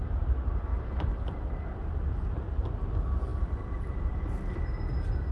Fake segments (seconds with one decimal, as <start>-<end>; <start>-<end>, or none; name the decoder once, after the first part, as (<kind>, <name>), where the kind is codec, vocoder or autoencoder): 0.7-2.1 (vocoder, BigVGAN v2); 3.3-4.1